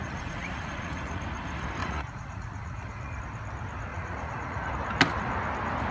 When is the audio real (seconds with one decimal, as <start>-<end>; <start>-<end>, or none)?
1.2-1.8; 3.2-3.9; 4.7-5.9